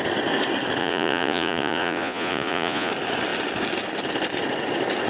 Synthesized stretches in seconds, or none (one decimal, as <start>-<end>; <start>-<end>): 0.8-2.9